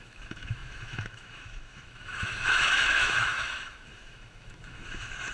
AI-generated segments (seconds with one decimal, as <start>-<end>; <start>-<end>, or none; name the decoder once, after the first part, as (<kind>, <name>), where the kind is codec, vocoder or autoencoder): 0.0-5.3 (autoencoder, DAC-VAE)